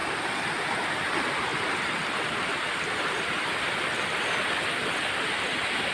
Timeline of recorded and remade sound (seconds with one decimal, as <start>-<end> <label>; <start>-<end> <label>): 0.0-5.9 recorded